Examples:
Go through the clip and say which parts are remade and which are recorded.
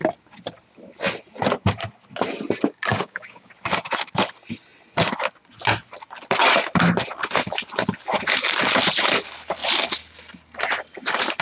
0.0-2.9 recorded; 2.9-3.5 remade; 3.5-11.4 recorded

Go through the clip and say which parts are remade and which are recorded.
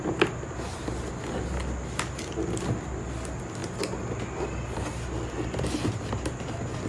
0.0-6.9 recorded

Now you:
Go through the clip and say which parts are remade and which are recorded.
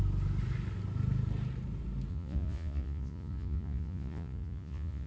0.0-2.1 recorded; 2.1-5.1 remade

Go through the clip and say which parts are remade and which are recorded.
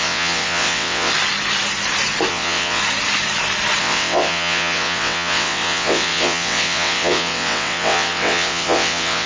0.0-1.1 remade; 1.1-2.3 recorded; 2.3-2.8 remade; 2.8-3.8 recorded; 3.8-9.3 remade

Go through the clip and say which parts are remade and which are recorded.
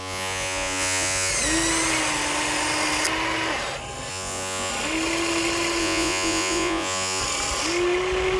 0.0-1.3 remade; 1.3-4.1 recorded; 4.1-4.7 remade; 4.7-5.8 recorded; 5.8-7.2 remade; 7.2-8.4 recorded